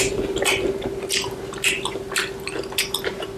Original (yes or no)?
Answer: yes